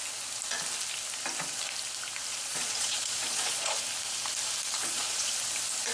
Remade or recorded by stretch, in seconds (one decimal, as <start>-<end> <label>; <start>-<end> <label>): 0.0-2.3 recorded; 2.3-3.8 remade; 3.8-4.8 recorded; 4.8-5.3 remade; 5.3-5.9 recorded